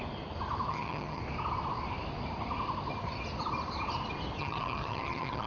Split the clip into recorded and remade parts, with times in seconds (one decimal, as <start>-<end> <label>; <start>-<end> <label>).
0.0-0.7 recorded; 0.7-1.2 remade; 1.2-4.4 recorded; 4.4-5.5 remade